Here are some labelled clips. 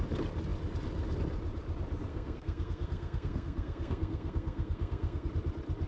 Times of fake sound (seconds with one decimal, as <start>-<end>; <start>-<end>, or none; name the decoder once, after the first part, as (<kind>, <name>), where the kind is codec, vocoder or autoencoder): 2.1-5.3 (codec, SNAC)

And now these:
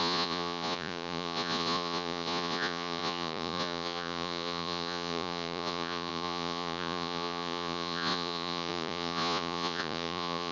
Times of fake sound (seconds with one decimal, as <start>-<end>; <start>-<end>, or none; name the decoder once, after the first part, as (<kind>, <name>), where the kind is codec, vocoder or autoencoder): 0.0-10.5 (vocoder, Vocos)

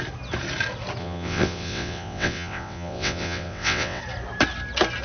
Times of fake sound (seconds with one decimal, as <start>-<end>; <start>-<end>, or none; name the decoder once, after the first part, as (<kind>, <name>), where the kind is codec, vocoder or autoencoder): 1.0-4.0 (vocoder, WaveNeXt)

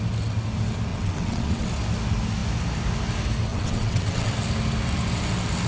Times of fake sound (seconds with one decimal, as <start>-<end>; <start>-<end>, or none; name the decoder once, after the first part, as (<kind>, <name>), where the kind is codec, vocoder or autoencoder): 0.9-1.7 (vocoder, WaveNeXt); 3.5-4.3

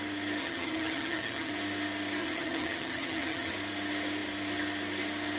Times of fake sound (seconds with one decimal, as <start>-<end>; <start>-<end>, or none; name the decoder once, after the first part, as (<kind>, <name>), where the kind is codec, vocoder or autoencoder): 0.4-1.5 (vocoder, HiFi-GAN); 2.2-3.5

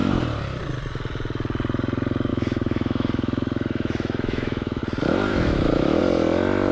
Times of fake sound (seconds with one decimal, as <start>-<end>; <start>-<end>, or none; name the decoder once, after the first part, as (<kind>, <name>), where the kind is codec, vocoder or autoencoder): 2.3-4.8 (autoencoder, DAC-VAE); 5.3-6.0